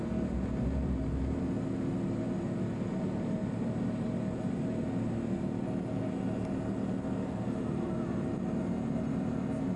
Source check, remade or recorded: recorded